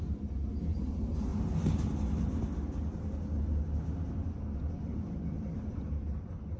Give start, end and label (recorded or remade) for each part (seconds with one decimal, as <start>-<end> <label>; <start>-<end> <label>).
0.0-1.3 remade; 1.3-4.1 recorded; 4.1-6.6 remade